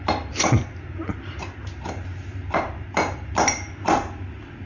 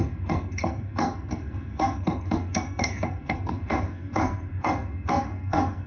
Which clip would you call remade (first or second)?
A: second